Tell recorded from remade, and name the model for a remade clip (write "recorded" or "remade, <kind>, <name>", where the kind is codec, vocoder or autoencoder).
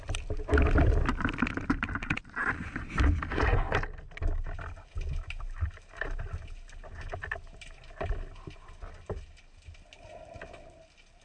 recorded